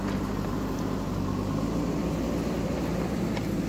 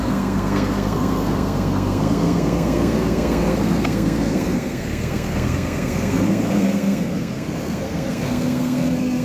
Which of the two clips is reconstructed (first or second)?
second